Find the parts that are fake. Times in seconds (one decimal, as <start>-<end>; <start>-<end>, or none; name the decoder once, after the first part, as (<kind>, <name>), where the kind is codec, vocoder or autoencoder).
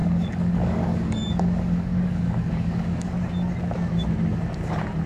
0.0-3.1 (codec, DAC)